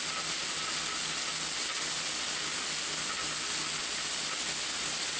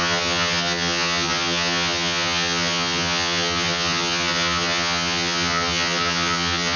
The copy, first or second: second